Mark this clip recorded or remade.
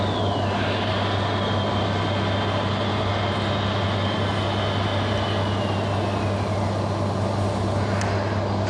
recorded